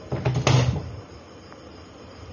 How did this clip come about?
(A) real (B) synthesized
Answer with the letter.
A